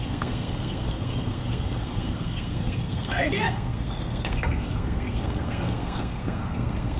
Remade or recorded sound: remade